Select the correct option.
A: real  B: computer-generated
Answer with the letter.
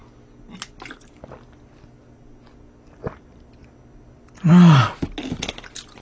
A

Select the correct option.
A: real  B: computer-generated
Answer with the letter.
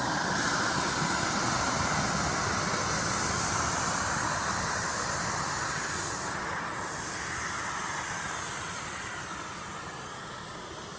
A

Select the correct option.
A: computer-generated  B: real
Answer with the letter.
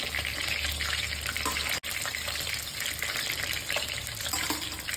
B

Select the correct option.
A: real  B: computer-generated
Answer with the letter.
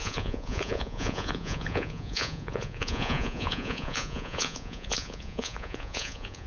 B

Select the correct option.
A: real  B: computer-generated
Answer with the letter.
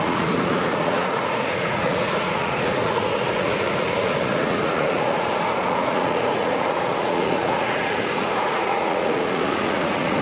B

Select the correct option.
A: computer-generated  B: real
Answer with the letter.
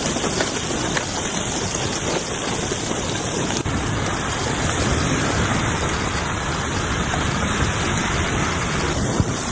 B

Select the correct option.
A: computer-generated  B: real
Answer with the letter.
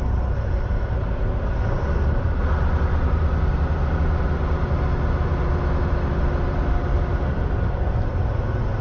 B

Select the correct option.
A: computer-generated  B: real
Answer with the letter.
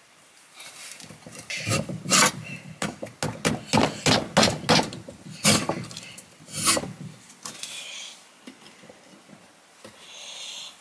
B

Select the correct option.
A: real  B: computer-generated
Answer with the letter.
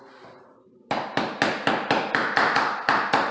A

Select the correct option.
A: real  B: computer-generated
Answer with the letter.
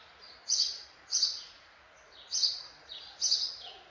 B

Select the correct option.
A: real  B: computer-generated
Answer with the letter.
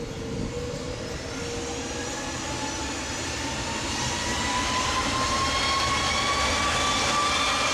A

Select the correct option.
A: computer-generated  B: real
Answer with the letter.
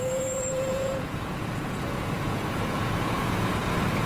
A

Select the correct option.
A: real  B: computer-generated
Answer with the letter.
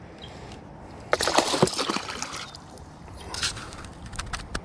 A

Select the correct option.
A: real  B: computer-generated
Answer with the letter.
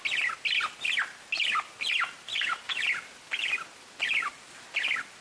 A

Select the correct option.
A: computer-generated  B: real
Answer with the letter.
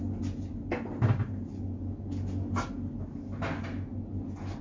B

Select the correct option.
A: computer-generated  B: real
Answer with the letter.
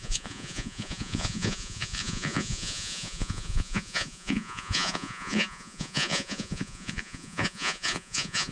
A